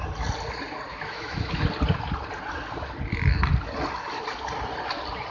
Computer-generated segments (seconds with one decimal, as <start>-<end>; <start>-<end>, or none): 0.9-1.6